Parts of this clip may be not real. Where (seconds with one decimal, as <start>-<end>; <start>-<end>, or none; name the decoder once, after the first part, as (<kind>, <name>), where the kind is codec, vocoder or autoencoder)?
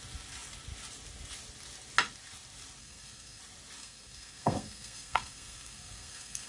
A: 2.8-3.4 (codec, SNAC); 3.8-6.5